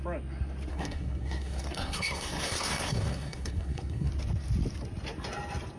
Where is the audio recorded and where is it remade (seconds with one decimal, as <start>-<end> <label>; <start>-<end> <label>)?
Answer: 0.0-0.7 recorded; 0.7-4.1 remade; 4.1-5.8 recorded